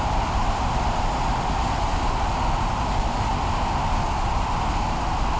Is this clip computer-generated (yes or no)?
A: no